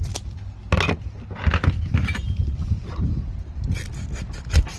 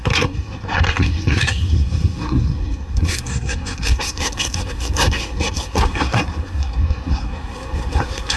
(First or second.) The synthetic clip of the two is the second